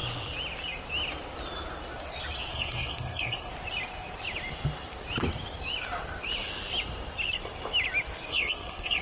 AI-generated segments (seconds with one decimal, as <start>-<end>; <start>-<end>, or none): 2.5-3.5; 8.3-9.0